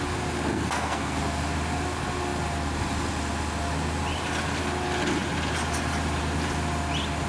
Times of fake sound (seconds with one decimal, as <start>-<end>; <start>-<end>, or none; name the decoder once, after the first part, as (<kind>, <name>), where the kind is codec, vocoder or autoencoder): 0.5-1.2 (codec, SNAC)